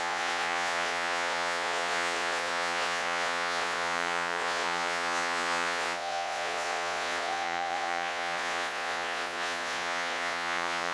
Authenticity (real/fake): fake